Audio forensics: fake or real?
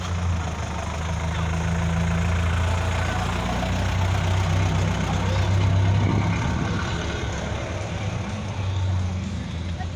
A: real